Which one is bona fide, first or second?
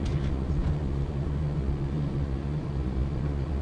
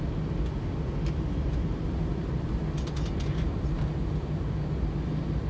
second